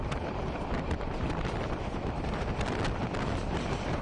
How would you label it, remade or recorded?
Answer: remade